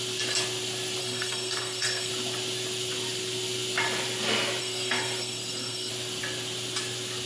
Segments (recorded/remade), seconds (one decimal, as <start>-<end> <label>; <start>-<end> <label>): 0.0-1.0 recorded; 1.0-2.1 remade; 2.1-4.6 recorded; 4.6-5.9 remade; 5.9-7.3 recorded